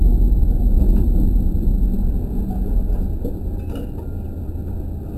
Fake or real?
real